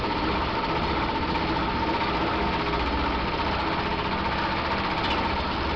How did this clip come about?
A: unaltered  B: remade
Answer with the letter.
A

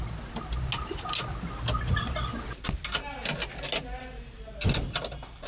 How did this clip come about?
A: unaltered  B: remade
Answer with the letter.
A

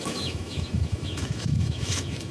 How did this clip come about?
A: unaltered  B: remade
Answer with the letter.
B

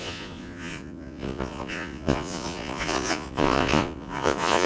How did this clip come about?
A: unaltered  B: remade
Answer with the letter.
B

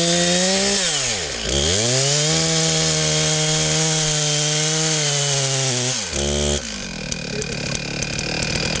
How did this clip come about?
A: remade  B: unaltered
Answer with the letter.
B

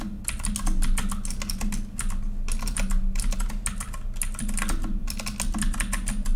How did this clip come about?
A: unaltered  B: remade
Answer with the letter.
A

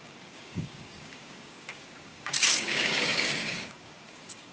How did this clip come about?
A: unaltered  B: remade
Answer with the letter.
B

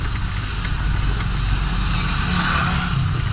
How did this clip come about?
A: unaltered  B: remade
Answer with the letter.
A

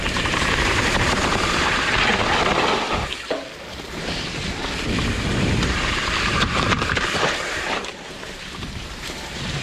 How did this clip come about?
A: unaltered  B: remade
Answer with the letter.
B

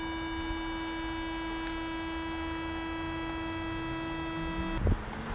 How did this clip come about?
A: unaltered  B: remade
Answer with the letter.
A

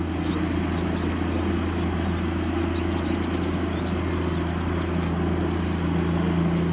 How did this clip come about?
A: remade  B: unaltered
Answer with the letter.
B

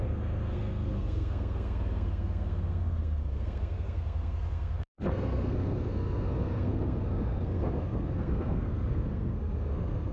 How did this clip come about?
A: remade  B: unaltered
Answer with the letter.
A